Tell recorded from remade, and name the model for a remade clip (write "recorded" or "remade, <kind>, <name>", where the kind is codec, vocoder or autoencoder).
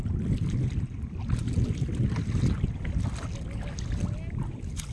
recorded